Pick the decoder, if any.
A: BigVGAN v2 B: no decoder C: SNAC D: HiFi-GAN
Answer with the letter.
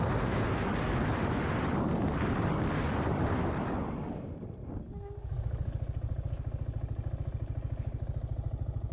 B